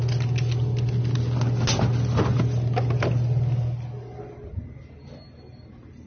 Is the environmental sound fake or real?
real